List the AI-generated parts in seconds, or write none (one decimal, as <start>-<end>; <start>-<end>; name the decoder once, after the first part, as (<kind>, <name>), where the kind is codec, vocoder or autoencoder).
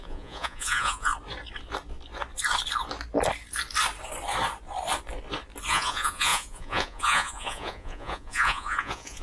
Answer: 0.0-1.1 (vocoder, Vocos); 5.7-9.2